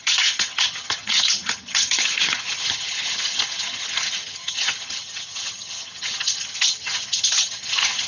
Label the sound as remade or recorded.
remade